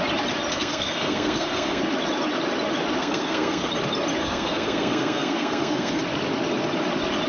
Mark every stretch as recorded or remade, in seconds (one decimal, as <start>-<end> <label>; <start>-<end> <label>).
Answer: 0.0-0.5 recorded; 0.5-1.8 remade; 1.8-3.0 recorded; 3.0-3.7 remade; 3.7-4.2 recorded; 4.2-6.0 remade; 6.0-7.3 recorded